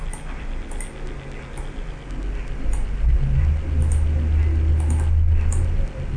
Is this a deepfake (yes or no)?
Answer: no